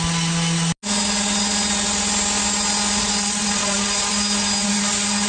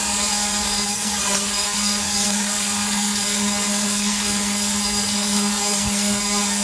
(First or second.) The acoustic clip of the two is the first